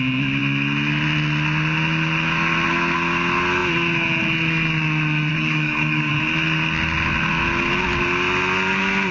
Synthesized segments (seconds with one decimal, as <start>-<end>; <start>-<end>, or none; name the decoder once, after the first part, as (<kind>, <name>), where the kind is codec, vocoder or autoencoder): 5.3-6.1 (codec, DAC)